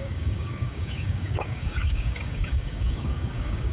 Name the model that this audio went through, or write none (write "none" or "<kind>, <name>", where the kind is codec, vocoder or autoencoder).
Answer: codec, DAC